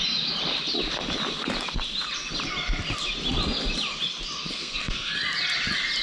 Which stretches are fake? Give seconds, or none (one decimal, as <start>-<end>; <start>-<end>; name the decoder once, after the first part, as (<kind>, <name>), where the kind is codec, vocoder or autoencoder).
4.5-5.1 (codec, SNAC)